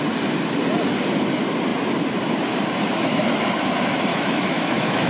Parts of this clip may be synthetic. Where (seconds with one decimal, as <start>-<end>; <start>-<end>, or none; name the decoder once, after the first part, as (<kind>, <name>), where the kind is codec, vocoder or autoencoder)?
4.1-5.1 (autoencoder, DAC-VAE)